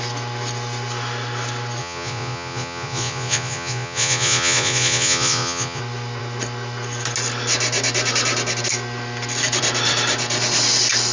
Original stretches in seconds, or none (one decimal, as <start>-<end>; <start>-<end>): 0.0-1.8; 5.8-11.1